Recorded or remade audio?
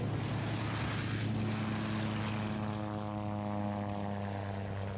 recorded